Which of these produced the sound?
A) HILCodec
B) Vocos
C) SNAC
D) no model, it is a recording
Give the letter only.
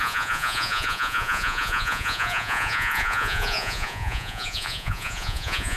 B